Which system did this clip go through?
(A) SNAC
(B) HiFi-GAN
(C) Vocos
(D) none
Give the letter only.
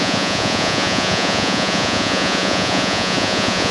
C